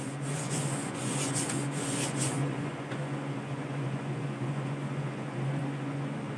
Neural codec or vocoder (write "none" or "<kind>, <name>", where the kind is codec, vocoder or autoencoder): vocoder, Vocos